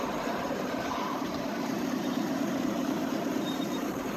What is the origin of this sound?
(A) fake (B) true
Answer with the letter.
A